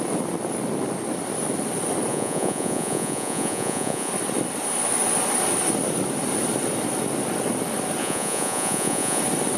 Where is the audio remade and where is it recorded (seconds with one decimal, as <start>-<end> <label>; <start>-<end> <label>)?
0.0-2.1 recorded; 2.1-4.1 remade; 4.1-8.0 recorded; 8.0-9.2 remade; 9.2-9.6 recorded